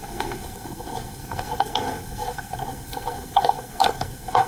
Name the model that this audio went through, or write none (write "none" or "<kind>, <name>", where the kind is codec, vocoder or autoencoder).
codec, SNAC